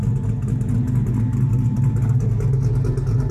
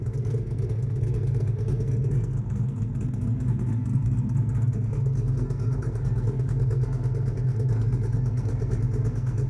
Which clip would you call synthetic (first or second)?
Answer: second